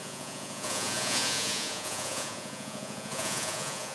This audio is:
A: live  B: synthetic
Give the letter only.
B